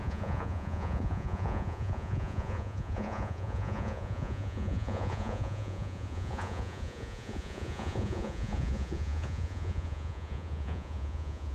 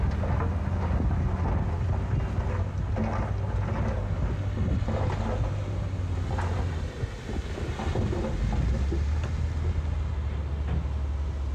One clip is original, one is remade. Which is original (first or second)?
second